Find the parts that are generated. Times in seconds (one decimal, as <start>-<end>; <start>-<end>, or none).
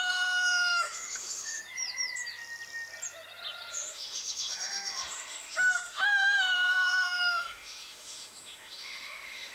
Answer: 0.0-1.6; 3.7-9.5